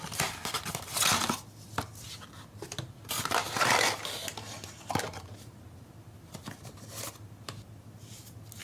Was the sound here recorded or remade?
recorded